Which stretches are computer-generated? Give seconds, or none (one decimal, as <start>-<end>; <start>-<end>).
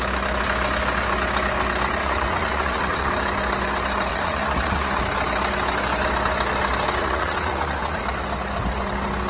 2.0-3.1; 4.1-5.0; 7.0-8.0